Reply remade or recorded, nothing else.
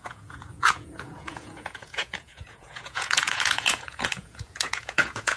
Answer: remade